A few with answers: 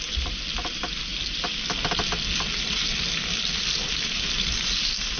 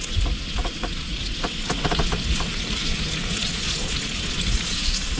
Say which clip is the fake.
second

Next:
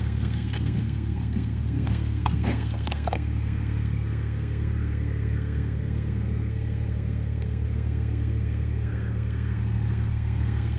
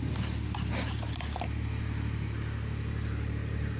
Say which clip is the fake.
first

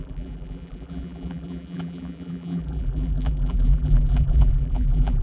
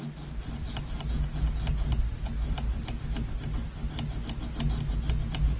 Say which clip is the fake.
first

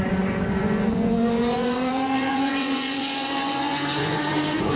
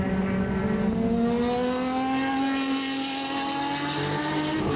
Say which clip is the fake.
first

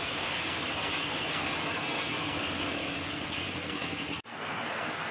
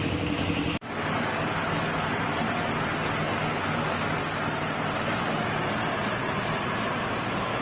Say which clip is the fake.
first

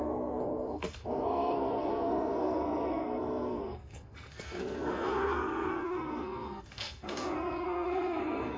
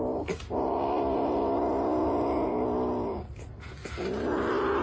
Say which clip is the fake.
first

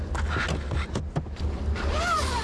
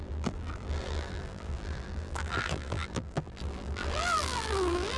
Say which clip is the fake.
second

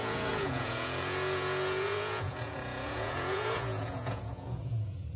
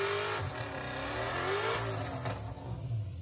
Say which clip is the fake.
first